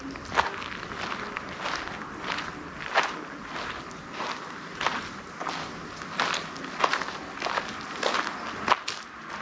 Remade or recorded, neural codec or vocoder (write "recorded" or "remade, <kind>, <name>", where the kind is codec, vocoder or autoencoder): recorded